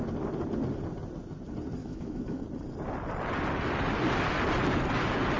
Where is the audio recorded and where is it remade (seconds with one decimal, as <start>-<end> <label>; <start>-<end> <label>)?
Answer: 0.0-1.8 recorded; 1.8-2.4 remade; 2.4-5.4 recorded